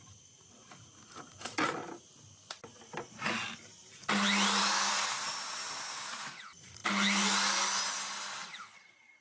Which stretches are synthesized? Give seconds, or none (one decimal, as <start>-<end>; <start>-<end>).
0.0-1.8; 4.9-6.8